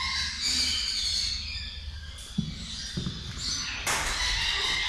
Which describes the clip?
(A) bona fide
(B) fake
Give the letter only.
A